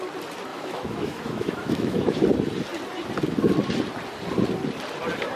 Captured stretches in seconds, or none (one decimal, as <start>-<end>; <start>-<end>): 0.0-0.5; 2.2-5.4